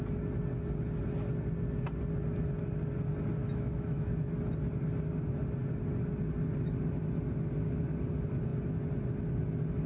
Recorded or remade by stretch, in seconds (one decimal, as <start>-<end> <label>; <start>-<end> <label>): 0.0-3.4 recorded; 3.4-4.3 remade; 4.3-9.9 recorded

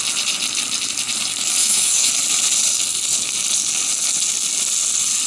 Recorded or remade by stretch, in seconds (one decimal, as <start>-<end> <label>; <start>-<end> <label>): 0.0-1.6 recorded; 1.6-2.1 remade; 2.1-5.3 recorded

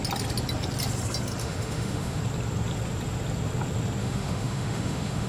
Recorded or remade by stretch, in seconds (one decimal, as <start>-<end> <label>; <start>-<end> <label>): 0.0-1.4 recorded; 1.4-2.2 remade; 2.2-4.0 recorded; 4.0-5.3 remade